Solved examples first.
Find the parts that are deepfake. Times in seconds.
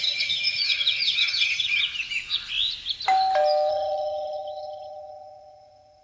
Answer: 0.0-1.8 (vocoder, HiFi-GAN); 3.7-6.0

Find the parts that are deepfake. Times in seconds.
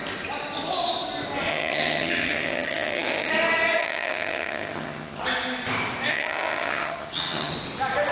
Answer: 1.5-3.3 (vocoder, HiFi-GAN); 3.8-5.2; 6.1-7.5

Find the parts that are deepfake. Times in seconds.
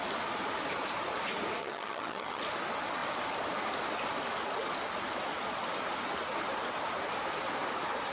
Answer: 1.6-2.4 (vocoder, HiFi-GAN)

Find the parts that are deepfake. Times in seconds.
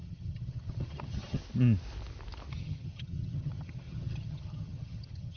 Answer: 0.0-1.4 (vocoder, HiFi-GAN); 2.5-5.4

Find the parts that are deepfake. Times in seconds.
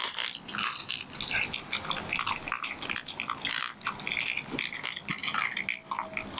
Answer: none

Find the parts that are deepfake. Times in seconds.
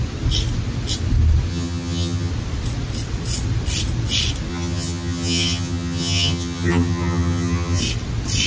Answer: 1.5-2.3 (vocoder, HiFi-GAN); 4.5-7.8